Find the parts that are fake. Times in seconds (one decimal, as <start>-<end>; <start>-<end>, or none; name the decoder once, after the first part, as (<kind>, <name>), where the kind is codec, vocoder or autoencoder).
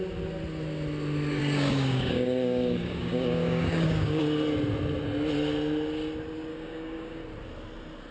1.4-4.2 (codec, DAC); 6.5-7.2